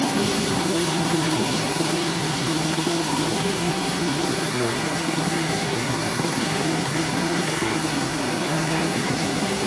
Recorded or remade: remade